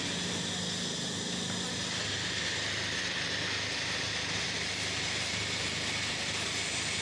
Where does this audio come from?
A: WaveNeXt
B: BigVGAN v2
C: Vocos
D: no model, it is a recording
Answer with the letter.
D